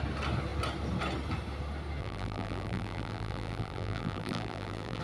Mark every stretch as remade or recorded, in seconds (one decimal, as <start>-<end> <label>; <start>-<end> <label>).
0.0-2.0 recorded; 2.0-5.0 remade